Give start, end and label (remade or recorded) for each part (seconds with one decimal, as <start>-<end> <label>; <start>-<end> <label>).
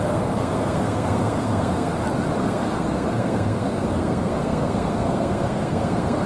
0.0-1.9 remade; 1.9-2.4 recorded; 2.4-6.3 remade